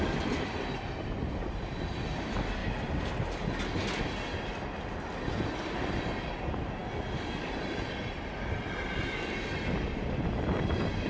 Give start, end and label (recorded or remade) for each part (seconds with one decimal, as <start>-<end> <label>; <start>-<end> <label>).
0.0-2.6 recorded; 2.6-3.1 remade; 3.1-11.1 recorded